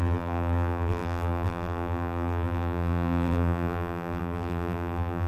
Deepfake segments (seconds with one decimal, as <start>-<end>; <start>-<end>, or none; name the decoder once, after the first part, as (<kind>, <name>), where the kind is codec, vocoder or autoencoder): 0.0-5.3 (vocoder, BigVGAN v2)